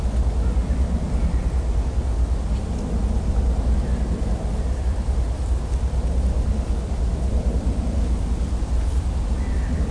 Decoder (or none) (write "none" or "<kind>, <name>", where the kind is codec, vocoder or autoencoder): none